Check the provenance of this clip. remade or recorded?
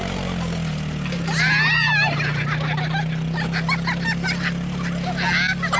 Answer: recorded